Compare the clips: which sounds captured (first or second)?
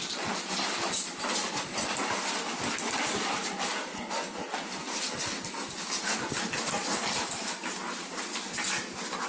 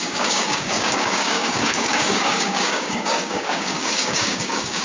first